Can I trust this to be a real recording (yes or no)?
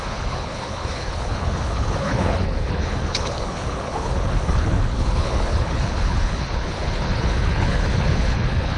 no